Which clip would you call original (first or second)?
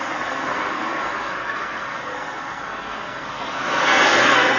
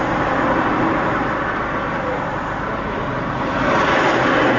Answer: second